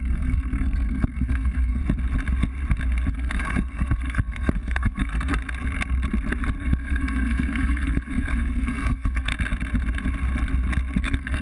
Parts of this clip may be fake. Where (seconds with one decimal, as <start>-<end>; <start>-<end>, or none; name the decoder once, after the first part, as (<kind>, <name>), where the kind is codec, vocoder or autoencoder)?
0.0-1.8 (codec, SNAC); 3.1-5.3; 6.6-9.3; 11.0-11.4